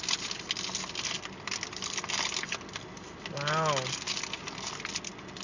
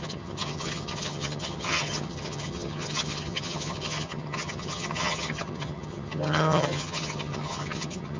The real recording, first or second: first